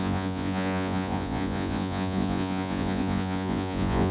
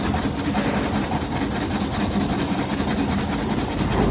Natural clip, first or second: second